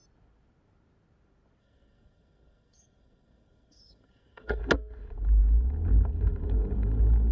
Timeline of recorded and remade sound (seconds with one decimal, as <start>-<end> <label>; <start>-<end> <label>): 0.0-1.6 recorded; 1.6-4.6 remade; 4.6-7.3 recorded